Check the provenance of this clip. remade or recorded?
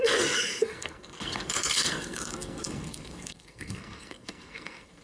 remade